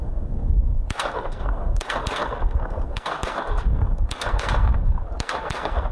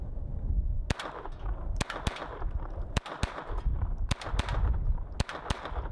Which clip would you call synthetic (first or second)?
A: first